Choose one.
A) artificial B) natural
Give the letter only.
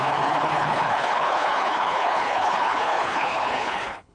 A